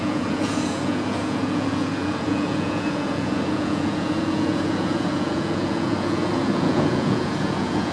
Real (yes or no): no